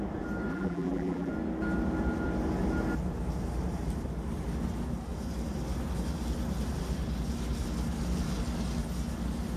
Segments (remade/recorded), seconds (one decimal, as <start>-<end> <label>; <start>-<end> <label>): 0.0-0.5 recorded; 0.5-1.3 remade; 1.3-9.6 recorded